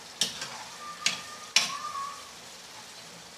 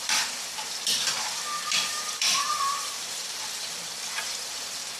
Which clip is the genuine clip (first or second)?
first